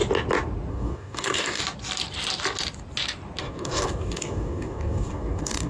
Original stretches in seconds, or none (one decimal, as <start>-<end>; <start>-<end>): 0.0-0.7; 1.6-3.4